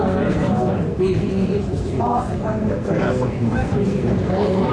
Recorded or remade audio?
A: remade